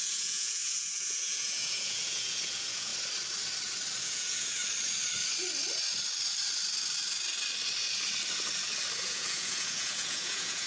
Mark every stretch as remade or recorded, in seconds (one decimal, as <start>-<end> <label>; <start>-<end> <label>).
0.0-2.9 remade; 2.9-4.0 recorded; 4.0-4.6 remade; 4.6-9.0 recorded; 9.0-10.7 remade